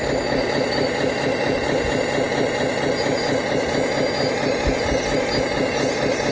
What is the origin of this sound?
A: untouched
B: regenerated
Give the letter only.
A